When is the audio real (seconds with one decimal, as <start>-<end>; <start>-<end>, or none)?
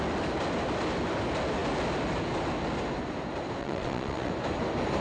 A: 0.0-3.6; 4.3-5.0